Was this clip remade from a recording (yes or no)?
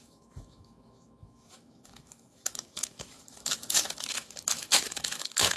yes